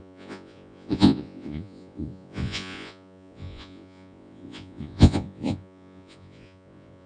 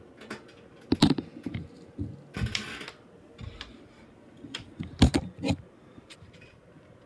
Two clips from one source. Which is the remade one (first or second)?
first